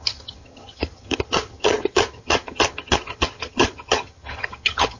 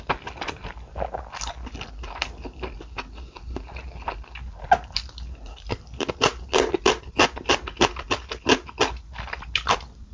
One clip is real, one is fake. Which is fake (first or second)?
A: first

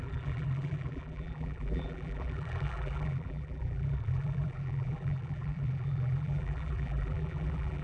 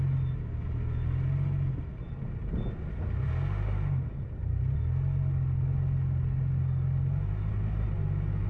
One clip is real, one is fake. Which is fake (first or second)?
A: first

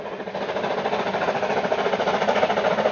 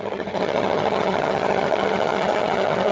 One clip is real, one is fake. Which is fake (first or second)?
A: second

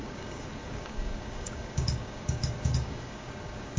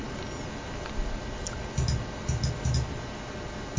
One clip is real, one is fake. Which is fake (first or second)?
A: first